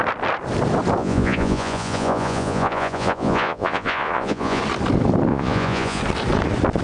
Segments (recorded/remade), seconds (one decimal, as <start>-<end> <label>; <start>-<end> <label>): 0.0-1.0 recorded; 1.0-4.6 remade; 4.6-5.3 recorded; 5.3-6.0 remade; 6.0-6.8 recorded